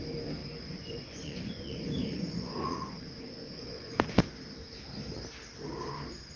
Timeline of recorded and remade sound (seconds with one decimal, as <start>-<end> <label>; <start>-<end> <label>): 0.0-0.4 recorded; 0.4-4.2 remade; 4.2-6.4 recorded